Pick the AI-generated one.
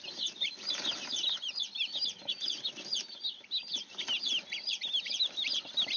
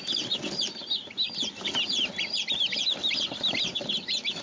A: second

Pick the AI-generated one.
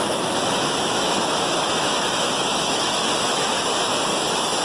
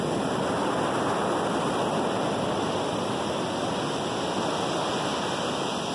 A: first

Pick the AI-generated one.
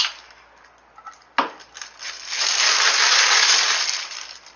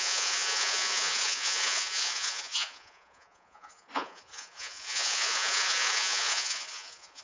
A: second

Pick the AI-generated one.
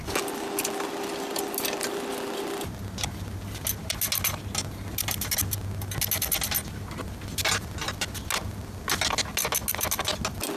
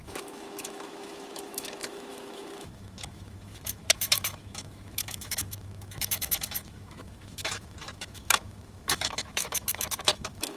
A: second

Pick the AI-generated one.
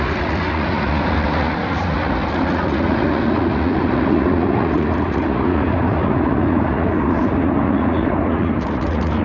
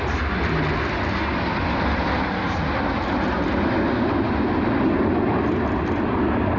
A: first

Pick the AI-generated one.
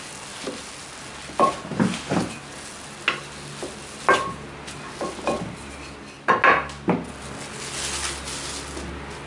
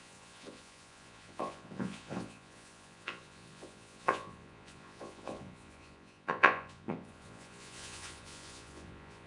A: second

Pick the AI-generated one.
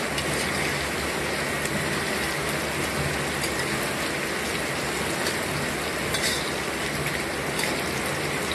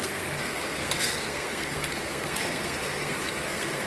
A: second